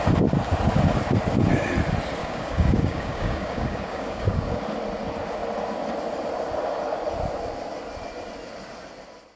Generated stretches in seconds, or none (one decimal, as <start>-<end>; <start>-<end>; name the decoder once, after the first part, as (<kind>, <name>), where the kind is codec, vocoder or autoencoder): 2.2-4.6 (codec, DAC)